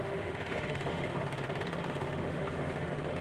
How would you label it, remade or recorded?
remade